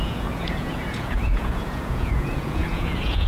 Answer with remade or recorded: remade